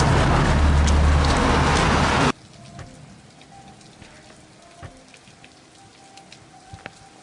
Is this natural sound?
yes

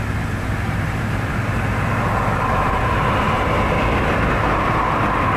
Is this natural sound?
no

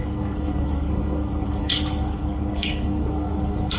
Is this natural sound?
no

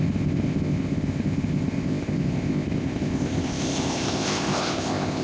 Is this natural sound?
no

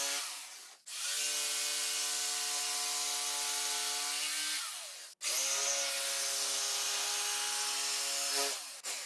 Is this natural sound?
yes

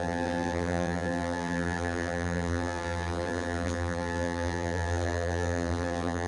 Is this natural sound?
no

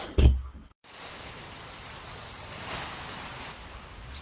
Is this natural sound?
yes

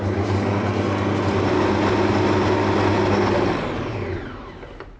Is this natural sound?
yes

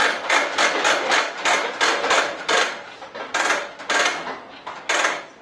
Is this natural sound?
yes